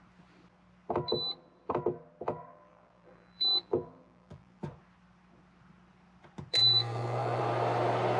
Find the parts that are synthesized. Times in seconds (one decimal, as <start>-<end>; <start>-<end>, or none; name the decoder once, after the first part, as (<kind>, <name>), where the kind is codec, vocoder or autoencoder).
2.5-4.6 (vocoder, BigVGAN v2); 6.6-7.4